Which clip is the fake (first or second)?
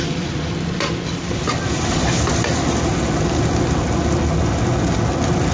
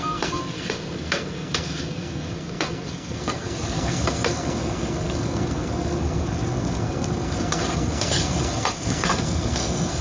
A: second